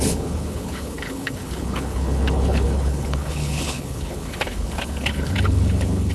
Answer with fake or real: fake